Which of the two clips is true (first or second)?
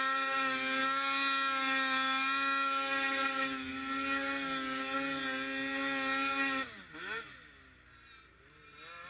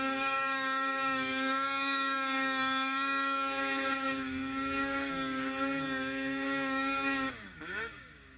first